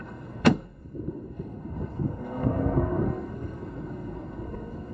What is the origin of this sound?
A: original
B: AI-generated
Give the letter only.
B